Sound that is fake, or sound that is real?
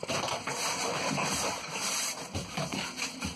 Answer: fake